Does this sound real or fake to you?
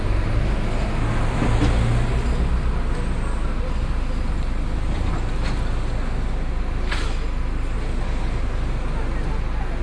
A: real